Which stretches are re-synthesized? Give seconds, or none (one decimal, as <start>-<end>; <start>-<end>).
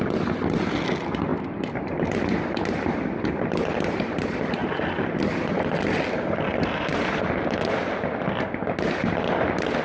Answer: none